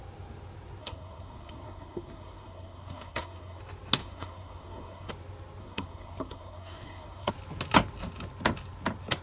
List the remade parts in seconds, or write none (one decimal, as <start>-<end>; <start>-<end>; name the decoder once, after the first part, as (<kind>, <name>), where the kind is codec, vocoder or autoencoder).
0.8-3.6 (codec, SNAC); 4.0-5.1; 5.6-7.3

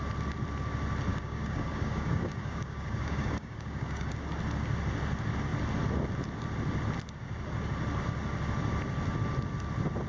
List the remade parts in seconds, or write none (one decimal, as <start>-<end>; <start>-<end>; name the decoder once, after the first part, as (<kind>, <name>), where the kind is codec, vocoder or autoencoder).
1.1-4.1 (codec, DAC)

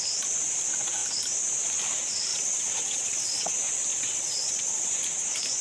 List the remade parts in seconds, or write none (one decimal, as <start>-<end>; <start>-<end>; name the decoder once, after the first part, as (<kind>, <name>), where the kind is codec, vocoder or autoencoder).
2.3-3.5 (vocoder, WaveNeXt); 3.9-4.9

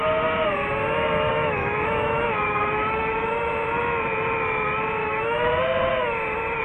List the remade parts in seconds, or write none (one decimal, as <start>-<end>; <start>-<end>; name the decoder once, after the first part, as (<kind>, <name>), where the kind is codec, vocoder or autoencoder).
1.3-3.5 (autoencoder, DAC-VAE); 5.0-5.5

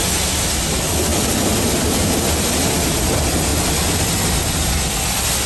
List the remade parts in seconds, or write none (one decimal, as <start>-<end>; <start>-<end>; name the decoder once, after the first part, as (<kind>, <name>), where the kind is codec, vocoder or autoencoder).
none